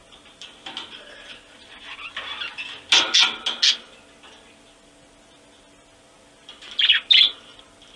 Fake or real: real